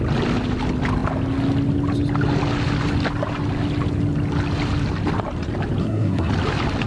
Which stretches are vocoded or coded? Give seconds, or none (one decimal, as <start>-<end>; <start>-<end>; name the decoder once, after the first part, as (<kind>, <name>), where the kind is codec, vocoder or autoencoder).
5.8-6.3 (codec, SNAC)